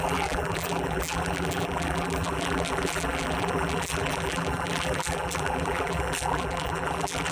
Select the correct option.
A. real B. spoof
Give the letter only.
B